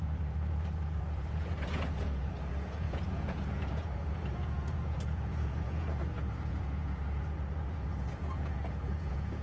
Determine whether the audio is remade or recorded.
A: remade